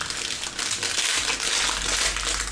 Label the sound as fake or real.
real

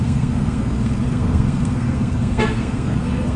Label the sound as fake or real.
fake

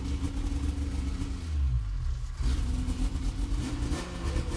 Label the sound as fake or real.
real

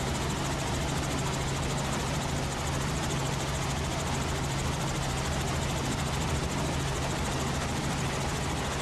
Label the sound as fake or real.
real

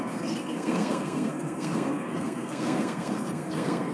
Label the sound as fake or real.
fake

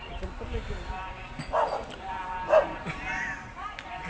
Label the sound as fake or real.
real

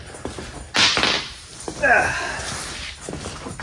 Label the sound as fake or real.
real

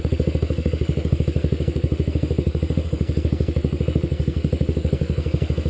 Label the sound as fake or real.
fake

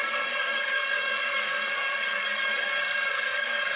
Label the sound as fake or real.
fake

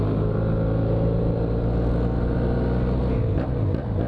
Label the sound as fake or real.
real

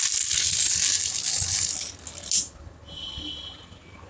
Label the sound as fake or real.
real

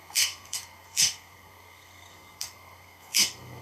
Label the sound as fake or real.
fake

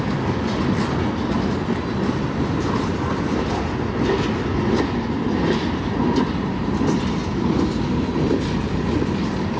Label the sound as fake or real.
real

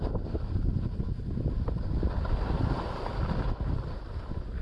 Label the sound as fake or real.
real